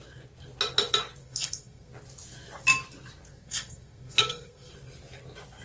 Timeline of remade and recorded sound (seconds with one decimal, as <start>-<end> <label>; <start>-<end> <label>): 0.0-1.2 recorded; 1.2-1.9 remade; 1.9-3.3 recorded; 3.3-4.7 remade; 4.7-5.6 recorded